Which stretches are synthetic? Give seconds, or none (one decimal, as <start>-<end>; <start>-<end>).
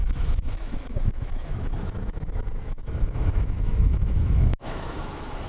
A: 0.0-5.5